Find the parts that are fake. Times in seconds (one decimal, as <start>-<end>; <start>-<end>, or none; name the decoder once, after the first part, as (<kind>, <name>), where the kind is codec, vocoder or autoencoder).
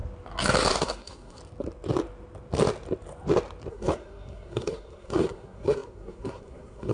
0.8-1.4 (codec, SNAC); 3.7-6.9